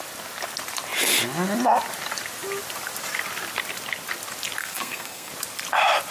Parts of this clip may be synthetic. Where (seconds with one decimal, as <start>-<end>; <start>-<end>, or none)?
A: 4.6-5.3